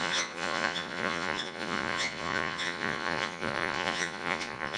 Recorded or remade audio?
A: remade